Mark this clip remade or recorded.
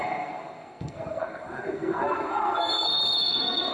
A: remade